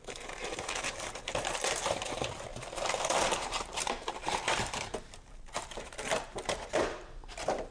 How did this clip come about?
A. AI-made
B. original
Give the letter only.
A